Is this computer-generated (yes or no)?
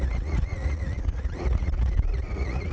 yes